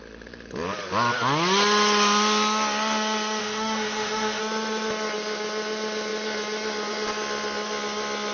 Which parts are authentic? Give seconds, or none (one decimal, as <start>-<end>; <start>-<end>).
0.0-3.4; 4.4-8.3